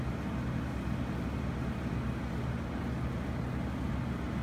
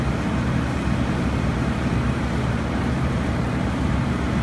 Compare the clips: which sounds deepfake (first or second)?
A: second